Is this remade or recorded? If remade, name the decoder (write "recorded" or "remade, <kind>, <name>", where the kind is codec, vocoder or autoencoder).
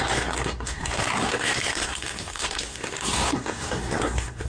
remade, codec, SNAC